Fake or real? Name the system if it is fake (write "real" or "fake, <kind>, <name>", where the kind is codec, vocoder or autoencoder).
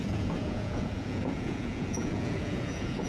fake, vocoder, Vocos